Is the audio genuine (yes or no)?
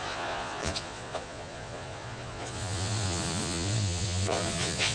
no